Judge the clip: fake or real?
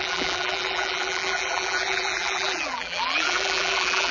fake